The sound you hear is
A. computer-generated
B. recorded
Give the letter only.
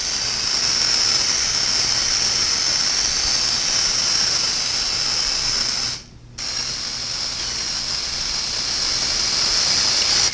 B